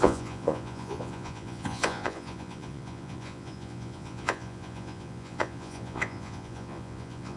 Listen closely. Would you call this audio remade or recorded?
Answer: remade